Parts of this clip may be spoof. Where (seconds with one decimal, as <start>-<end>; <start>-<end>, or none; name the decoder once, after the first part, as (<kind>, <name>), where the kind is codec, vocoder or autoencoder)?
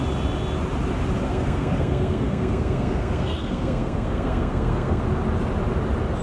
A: 1.3-5.0 (codec, SNAC)